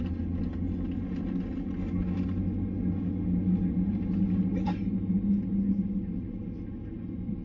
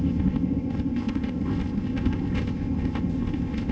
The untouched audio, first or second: first